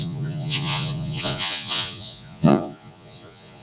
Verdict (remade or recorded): remade